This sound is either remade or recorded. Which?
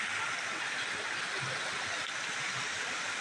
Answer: recorded